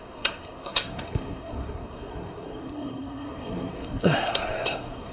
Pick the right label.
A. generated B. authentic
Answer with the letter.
A